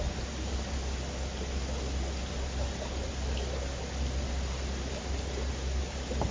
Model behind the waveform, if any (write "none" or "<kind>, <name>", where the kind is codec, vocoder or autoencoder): none